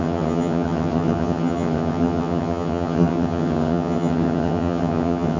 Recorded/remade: remade